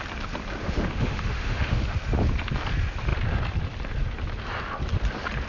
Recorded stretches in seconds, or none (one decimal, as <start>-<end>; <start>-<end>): 0.0-0.6; 1.8-5.5